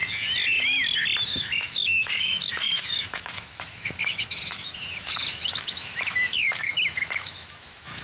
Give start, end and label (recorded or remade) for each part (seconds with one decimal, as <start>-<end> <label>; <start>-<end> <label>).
0.0-1.2 recorded; 1.2-8.0 remade